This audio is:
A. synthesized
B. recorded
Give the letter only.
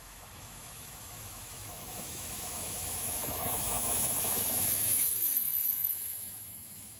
A